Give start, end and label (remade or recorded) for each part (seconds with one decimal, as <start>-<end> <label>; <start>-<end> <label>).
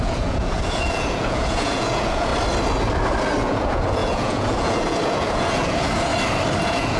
0.0-2.3 remade; 2.3-3.4 recorded; 3.4-6.1 remade; 6.1-6.6 recorded; 6.6-7.0 remade